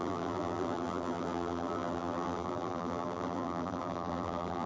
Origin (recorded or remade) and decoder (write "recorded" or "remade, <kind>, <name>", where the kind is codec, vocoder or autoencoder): remade, vocoder, BigVGAN v2